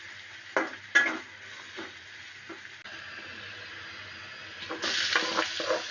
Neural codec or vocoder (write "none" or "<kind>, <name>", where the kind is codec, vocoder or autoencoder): none